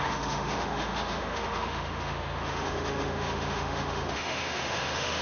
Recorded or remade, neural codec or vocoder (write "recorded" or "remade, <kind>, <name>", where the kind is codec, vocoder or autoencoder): remade, autoencoder, DAC-VAE